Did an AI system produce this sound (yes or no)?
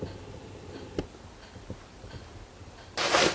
no